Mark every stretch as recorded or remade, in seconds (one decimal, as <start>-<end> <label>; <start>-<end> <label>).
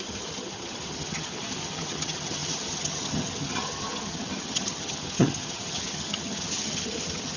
0.0-7.4 remade